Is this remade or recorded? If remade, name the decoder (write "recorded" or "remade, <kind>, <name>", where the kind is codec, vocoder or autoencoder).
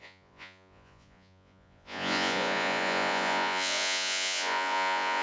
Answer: remade, vocoder, Vocos